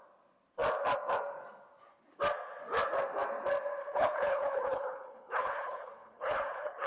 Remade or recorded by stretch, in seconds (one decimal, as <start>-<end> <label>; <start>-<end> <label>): 0.0-3.8 recorded; 3.8-6.9 remade